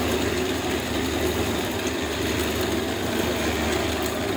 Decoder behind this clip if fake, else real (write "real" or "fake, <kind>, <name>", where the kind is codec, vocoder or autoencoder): real